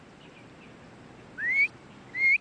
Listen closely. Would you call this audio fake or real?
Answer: real